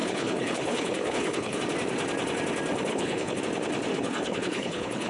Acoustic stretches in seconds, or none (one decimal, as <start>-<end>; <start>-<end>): 1.6-2.9; 3.4-3.9